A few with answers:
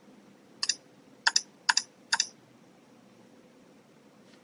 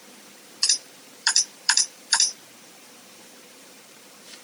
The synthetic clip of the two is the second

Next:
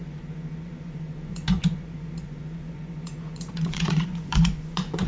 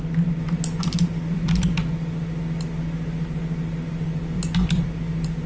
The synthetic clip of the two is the first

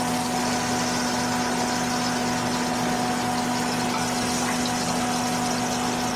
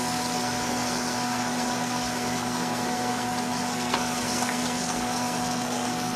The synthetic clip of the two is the second